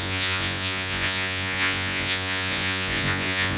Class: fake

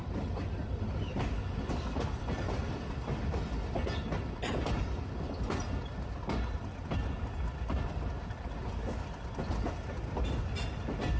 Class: real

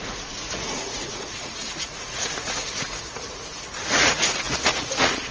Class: fake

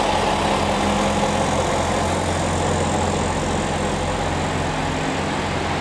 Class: real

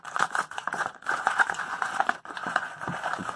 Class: fake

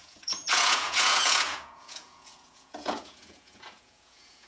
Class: fake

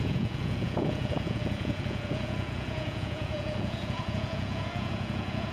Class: fake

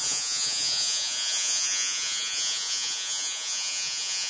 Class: fake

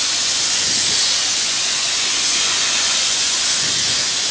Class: fake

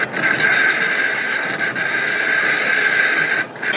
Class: real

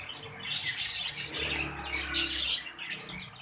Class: real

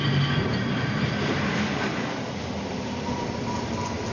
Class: real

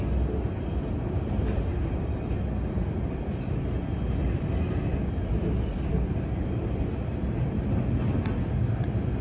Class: real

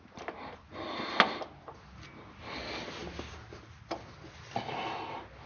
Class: real